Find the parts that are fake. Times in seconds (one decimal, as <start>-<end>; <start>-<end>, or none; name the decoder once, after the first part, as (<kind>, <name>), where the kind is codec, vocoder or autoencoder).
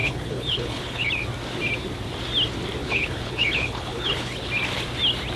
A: 0.0-1.1 (codec, HILCodec); 2.8-4.5